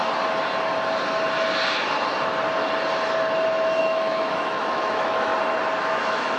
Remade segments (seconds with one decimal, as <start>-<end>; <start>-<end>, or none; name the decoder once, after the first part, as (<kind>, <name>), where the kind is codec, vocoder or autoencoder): 3.8-5.3 (autoencoder, DAC-VAE); 5.8-6.4